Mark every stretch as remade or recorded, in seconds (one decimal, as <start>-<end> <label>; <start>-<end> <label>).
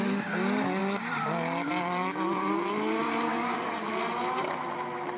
0.0-0.8 recorded; 0.8-3.9 remade; 3.9-5.2 recorded